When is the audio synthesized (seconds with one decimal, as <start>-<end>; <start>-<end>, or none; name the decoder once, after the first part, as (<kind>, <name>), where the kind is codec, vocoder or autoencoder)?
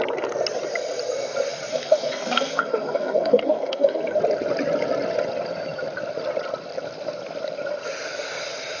1.7-4.2 (codec, SNAC)